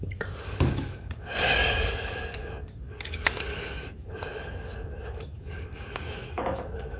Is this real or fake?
fake